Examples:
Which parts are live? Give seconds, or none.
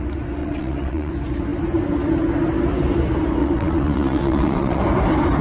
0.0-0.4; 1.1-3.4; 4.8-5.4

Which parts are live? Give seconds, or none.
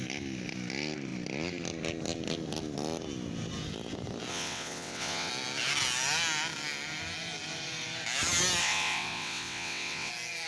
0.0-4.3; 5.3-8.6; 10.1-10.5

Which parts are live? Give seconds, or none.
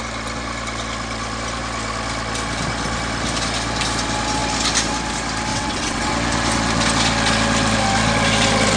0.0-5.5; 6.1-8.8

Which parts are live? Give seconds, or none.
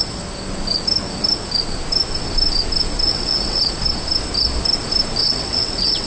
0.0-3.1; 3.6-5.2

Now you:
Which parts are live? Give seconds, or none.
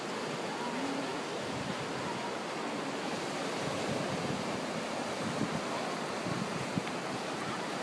0.0-7.8